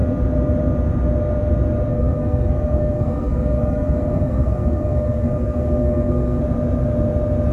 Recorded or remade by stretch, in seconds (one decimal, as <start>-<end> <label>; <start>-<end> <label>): 0.0-1.9 recorded; 1.9-6.4 remade; 6.4-7.5 recorded

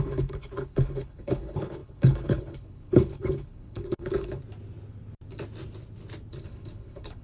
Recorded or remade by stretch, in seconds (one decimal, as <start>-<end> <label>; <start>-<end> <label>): 0.0-4.4 remade; 4.4-6.3 recorded; 6.3-7.2 remade

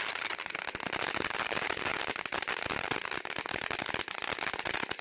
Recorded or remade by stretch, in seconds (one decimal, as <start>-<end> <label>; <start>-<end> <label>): 0.0-5.0 recorded

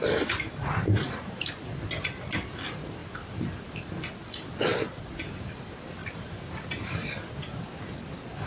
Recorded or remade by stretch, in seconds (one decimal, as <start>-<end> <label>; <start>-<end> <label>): 0.0-1.5 remade; 1.5-4.7 recorded; 4.7-5.5 remade; 5.5-6.0 recorded; 6.0-7.4 remade; 7.4-8.5 recorded